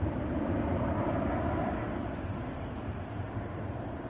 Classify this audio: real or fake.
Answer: fake